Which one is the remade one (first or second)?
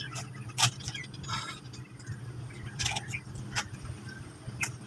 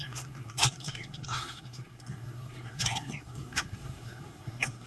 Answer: second